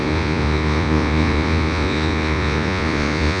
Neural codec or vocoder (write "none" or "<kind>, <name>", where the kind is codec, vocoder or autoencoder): vocoder, Vocos